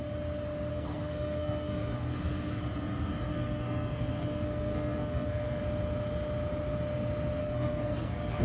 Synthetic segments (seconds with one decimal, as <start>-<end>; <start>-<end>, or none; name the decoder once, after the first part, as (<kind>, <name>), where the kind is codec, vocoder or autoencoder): 0.7-2.6 (codec, SNAC); 3.3-5.6; 7.4-8.4